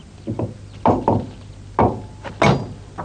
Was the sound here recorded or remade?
recorded